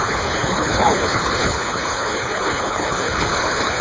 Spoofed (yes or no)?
yes